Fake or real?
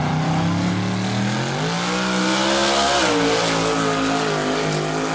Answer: real